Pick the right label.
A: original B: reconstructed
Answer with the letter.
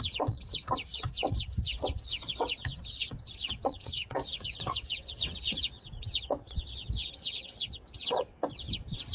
B